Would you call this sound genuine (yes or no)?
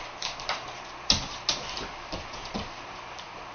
no